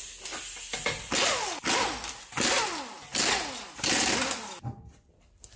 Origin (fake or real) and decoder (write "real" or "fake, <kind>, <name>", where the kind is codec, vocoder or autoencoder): real